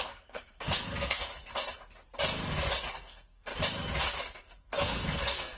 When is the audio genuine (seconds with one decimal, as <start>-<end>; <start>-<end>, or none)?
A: 1.3-2.9; 3.5-4.2